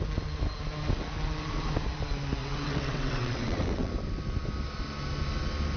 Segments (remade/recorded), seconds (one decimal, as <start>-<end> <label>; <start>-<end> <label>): 0.0-2.4 recorded; 2.4-3.9 remade; 3.9-5.8 recorded